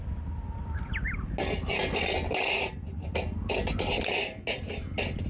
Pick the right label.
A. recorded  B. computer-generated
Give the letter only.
A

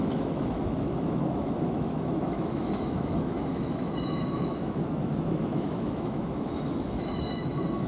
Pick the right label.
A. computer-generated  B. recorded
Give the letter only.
A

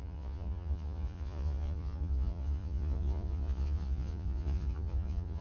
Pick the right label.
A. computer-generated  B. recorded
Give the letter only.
A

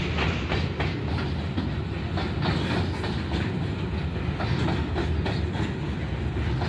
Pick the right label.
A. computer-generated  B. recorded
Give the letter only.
B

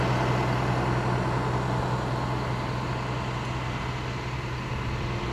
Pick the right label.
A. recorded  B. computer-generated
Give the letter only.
A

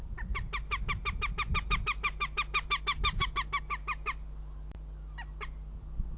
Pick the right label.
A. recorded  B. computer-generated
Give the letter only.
A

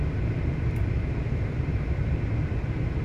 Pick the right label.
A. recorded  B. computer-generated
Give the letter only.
A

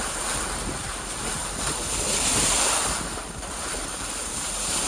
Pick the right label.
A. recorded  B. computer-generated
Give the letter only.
B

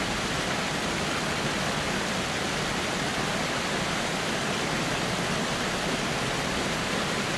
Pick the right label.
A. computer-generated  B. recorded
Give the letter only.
B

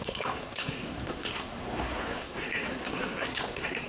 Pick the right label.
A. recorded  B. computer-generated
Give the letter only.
B